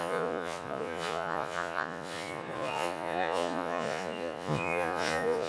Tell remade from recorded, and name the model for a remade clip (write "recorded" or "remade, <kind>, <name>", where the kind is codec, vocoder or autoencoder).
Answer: remade, vocoder, Vocos